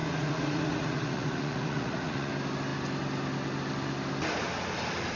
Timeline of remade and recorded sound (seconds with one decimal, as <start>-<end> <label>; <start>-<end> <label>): 0.0-2.3 remade; 2.3-5.2 recorded